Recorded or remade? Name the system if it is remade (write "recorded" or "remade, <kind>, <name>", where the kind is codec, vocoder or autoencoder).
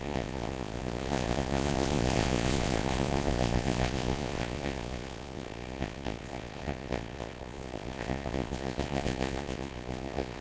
remade, vocoder, Vocos